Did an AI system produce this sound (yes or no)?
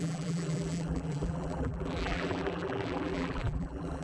yes